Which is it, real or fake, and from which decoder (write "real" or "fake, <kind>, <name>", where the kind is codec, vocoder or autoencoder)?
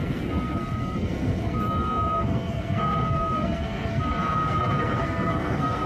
fake, codec, SNAC